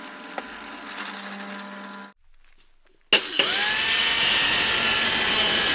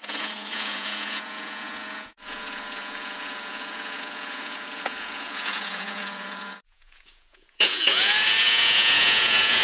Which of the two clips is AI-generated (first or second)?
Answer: second